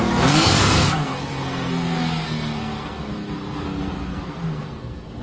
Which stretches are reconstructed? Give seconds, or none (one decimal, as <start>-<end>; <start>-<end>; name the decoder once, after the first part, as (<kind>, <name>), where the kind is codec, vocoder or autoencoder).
0.0-5.2 (codec, SNAC)